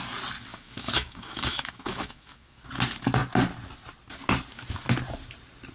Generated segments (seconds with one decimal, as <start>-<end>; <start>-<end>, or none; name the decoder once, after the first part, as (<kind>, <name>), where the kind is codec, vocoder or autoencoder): 0.5-2.6 (autoencoder, DAC-VAE)